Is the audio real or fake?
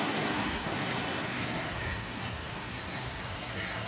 fake